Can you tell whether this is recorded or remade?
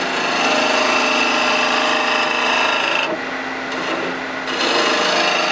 recorded